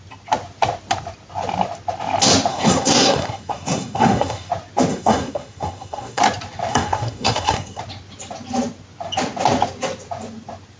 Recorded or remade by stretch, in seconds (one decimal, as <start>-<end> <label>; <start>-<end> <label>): 0.0-2.5 recorded; 2.5-4.5 remade; 4.5-4.9 recorded; 4.9-6.2 remade; 6.2-6.7 recorded; 6.7-7.8 remade; 7.8-10.8 recorded